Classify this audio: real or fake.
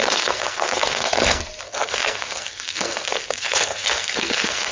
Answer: fake